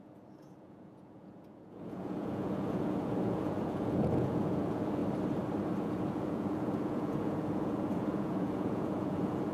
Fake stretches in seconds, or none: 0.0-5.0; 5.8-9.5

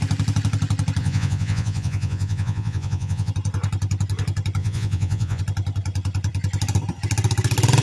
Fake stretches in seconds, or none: 1.0-3.3; 4.6-5.4

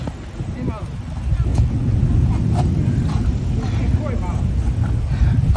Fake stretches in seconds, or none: 1.5-2.0

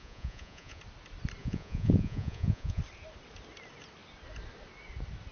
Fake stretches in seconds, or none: 0.0-0.8; 1.4-2.8

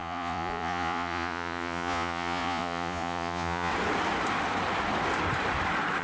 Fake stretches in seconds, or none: 0.0-3.7

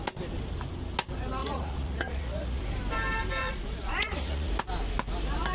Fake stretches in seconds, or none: 1.4-2.6; 3.4-4.5